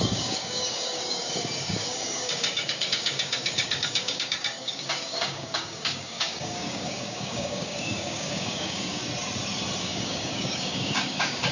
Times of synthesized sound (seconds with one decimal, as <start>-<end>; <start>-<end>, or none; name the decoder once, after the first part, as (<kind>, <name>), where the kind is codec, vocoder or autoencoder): 0.0-9.0 (codec, DAC); 9.8-11.5